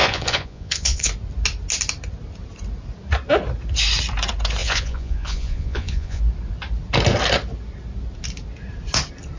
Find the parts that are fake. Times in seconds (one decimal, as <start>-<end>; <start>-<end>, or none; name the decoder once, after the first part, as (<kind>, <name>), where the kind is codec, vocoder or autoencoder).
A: 0.0-1.1 (vocoder, Vocos); 4.6-6.2